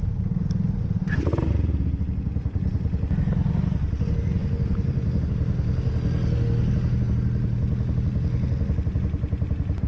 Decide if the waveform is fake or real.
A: real